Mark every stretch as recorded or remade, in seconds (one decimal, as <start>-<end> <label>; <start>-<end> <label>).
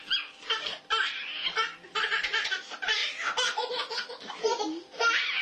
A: 0.0-5.4 recorded